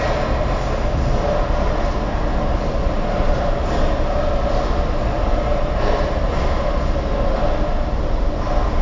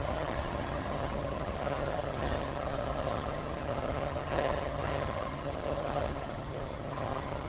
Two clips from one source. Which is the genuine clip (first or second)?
first